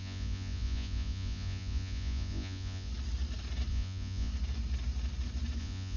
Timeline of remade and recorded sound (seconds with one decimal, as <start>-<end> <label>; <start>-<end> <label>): 0.0-2.9 remade; 2.9-3.7 recorded; 3.7-4.3 remade; 4.3-5.6 recorded; 5.6-6.0 remade